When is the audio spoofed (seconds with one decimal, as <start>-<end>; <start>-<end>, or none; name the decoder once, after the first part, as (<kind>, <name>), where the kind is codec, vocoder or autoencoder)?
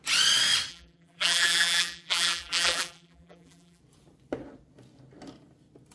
0.7-3.8 (vocoder, BigVGAN v2)